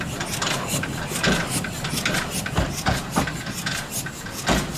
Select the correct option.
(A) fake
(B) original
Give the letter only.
B